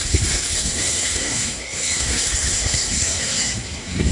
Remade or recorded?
remade